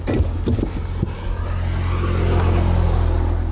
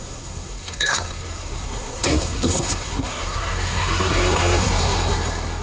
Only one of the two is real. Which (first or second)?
first